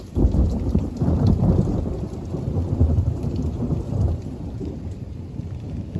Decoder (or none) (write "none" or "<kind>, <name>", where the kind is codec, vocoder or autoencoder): vocoder, BigVGAN v2